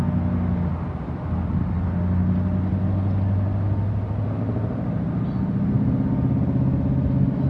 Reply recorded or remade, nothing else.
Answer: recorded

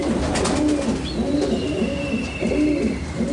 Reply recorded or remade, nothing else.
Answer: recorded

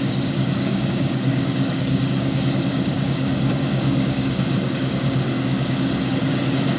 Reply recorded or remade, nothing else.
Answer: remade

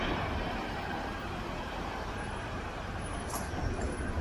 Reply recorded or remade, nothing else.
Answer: remade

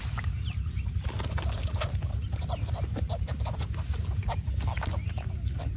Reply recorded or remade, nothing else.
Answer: recorded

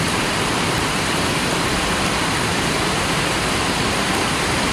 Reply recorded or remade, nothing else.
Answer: remade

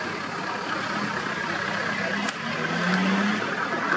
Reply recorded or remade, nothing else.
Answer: recorded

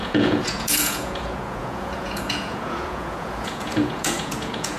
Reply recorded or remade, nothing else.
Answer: remade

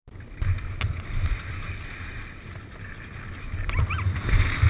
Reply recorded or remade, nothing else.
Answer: recorded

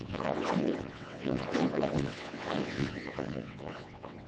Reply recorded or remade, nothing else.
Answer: remade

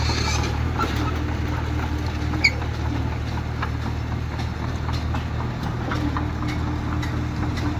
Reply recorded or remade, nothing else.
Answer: recorded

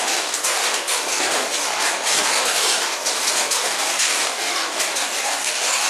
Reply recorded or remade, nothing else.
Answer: remade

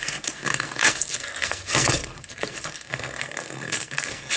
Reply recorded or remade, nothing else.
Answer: remade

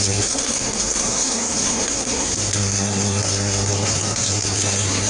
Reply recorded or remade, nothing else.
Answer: remade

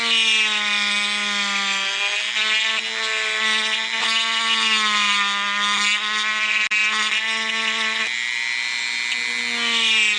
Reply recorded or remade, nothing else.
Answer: recorded